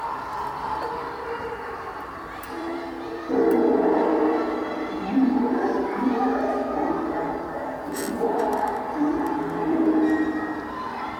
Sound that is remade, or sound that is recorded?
remade